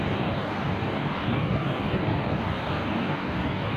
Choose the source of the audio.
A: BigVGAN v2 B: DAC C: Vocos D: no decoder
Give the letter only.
B